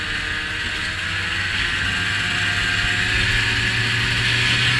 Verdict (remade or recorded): recorded